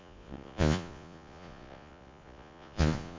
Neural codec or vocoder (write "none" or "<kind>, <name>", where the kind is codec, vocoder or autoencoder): vocoder, Vocos